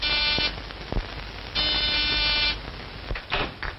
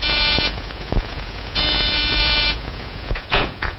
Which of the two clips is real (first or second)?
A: first